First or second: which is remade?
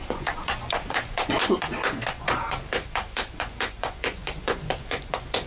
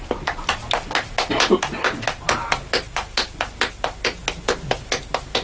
first